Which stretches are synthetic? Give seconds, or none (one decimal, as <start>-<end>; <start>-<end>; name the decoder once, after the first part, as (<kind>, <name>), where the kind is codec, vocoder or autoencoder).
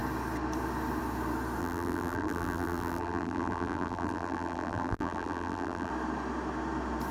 1.6-5.9 (vocoder, BigVGAN v2)